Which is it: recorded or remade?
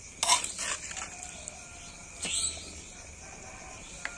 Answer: recorded